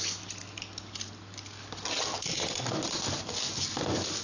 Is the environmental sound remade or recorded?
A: remade